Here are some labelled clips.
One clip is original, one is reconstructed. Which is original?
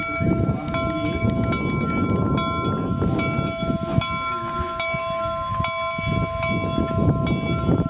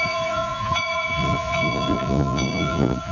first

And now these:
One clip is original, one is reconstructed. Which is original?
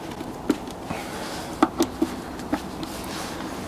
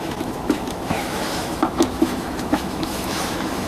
first